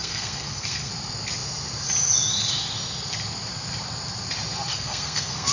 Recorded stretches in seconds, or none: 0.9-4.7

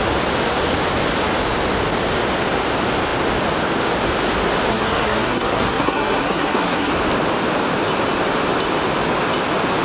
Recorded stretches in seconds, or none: 0.0-4.7; 6.9-9.8